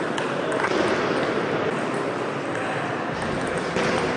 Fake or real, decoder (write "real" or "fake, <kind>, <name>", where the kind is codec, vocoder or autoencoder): real